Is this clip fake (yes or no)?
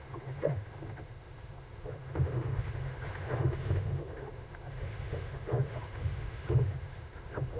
yes